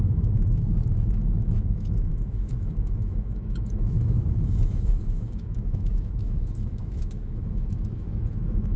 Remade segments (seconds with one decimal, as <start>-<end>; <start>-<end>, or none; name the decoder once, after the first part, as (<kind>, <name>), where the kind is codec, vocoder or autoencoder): 0.0-8.8 (autoencoder, DAC-VAE)